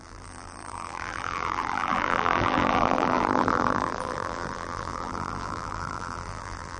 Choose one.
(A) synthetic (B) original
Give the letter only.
A